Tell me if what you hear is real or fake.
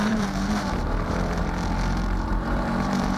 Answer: fake